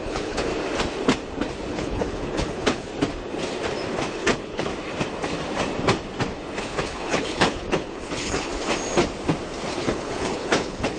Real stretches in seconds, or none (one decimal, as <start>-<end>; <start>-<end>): 0.5-1.7; 2.9-4.1; 4.7-6.6; 8.5-9.7